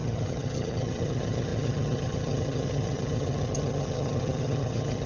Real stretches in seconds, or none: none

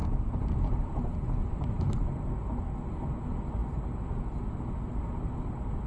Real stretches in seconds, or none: 2.3-5.9